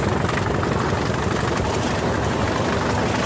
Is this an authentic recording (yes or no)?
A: yes